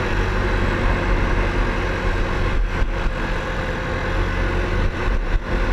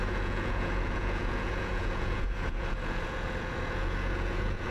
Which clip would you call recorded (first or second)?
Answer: first